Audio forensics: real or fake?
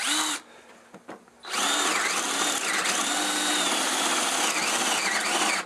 real